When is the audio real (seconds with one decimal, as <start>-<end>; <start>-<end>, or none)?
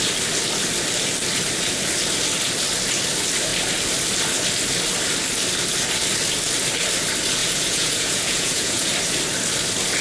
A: 0.0-7.4; 8.9-10.0